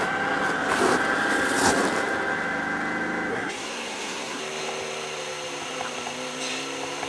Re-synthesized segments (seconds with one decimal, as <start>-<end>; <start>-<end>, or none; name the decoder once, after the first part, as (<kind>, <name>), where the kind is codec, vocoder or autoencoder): 3.3-4.4 (codec, SNAC)